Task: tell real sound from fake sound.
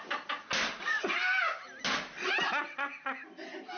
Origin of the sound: real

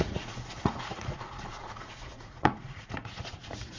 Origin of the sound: fake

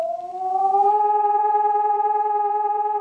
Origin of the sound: fake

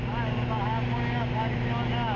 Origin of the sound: real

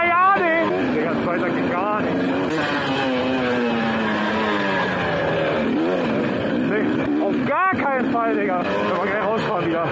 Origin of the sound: real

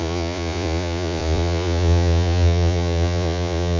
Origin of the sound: fake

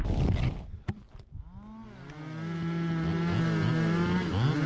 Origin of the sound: real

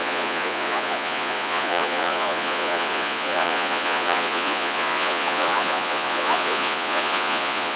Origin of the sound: fake